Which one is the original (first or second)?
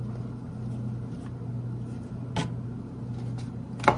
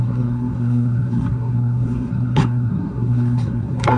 first